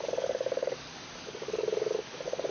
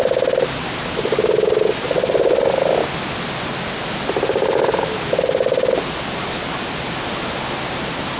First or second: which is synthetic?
first